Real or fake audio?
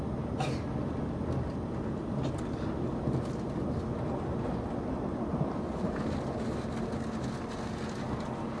real